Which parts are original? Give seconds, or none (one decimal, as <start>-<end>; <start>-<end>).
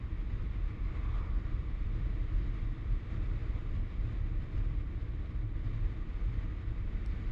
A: 0.0-7.3